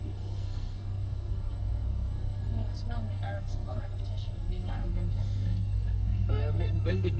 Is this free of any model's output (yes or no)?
no